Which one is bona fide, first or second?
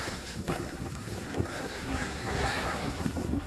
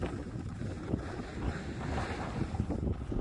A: second